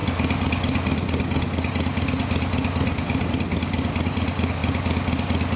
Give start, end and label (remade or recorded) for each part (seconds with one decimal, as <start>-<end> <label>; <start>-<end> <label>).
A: 0.0-5.6 recorded